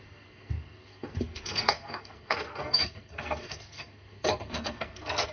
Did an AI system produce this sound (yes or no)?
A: yes